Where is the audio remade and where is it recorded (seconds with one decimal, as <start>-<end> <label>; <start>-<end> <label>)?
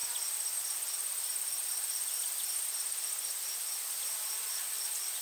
0.0-3.1 recorded; 3.1-5.2 remade